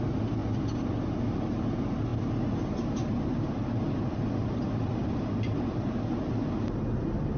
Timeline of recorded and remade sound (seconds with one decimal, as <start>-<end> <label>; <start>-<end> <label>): 0.0-2.1 recorded; 2.1-5.6 remade; 5.6-7.4 recorded